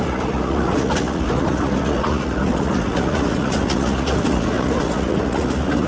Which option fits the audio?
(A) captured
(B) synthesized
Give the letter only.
B